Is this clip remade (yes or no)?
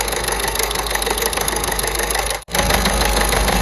yes